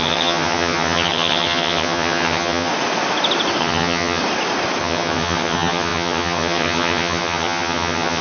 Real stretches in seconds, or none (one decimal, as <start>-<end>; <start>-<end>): 2.7-3.6; 4.2-4.8